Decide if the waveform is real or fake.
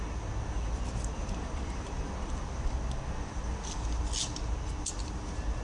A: real